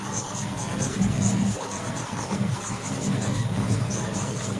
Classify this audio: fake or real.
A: fake